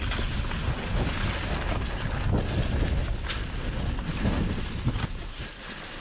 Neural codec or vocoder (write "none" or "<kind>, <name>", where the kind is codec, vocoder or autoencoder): none